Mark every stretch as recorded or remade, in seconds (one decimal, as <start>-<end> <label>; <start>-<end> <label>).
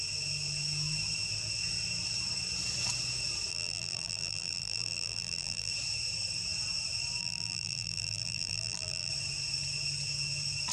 0.0-3.5 recorded; 3.5-5.7 remade; 5.7-7.2 recorded; 7.2-9.1 remade; 9.1-10.7 recorded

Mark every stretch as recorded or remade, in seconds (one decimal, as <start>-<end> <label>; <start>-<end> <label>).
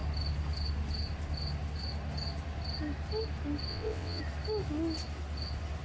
0.0-3.7 recorded; 3.7-4.2 remade; 4.2-5.8 recorded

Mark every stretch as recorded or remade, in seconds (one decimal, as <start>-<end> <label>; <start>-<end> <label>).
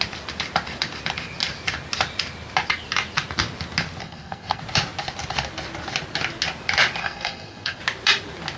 0.0-4.0 recorded; 4.0-4.6 remade; 4.6-7.0 recorded; 7.0-7.8 remade; 7.8-8.6 recorded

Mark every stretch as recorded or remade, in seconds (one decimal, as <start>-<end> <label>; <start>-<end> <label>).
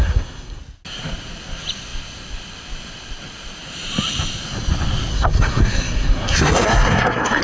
0.0-0.6 remade; 0.6-5.1 recorded; 5.1-7.4 remade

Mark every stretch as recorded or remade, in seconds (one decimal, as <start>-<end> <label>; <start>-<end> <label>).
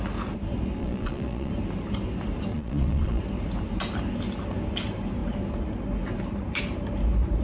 0.0-0.8 recorded; 0.8-1.5 remade; 1.5-2.5 recorded; 2.5-3.2 remade; 3.2-7.4 recorded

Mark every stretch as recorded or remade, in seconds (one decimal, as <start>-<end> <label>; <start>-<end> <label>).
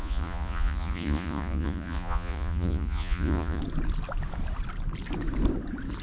0.0-3.6 remade; 3.6-6.0 recorded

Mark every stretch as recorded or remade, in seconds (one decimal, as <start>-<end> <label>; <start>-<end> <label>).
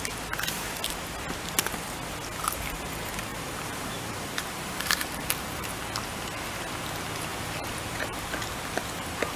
0.0-3.3 recorded; 3.3-5.8 remade; 5.8-7.3 recorded; 7.3-8.3 remade; 8.3-9.4 recorded